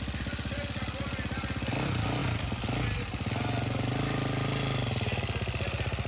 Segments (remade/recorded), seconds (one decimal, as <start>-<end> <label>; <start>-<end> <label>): 0.0-6.1 recorded